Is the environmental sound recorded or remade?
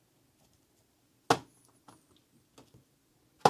recorded